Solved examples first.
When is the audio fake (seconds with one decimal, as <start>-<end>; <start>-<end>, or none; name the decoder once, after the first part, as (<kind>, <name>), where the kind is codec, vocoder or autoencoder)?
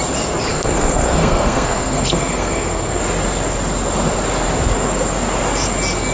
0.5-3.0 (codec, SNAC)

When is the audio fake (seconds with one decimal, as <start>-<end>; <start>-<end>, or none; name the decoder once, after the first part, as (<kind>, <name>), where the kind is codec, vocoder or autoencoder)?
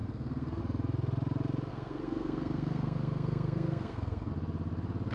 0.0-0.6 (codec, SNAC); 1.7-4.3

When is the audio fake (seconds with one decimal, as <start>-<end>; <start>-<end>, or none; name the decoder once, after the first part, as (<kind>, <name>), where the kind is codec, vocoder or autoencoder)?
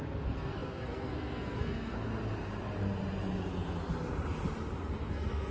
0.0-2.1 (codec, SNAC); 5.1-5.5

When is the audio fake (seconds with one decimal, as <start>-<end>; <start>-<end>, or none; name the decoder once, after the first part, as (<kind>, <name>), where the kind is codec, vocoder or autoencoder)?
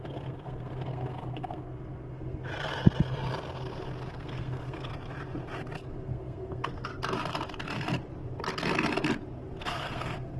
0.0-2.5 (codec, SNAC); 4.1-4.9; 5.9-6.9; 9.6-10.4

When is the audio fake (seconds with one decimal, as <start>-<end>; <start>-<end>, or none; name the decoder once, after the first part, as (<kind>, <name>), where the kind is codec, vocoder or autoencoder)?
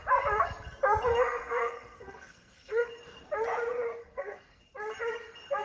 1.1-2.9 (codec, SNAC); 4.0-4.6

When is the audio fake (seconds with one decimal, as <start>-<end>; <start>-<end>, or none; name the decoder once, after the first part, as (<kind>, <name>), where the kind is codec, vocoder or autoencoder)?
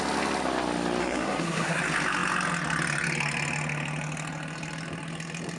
1.0-1.8 (codec, SNAC)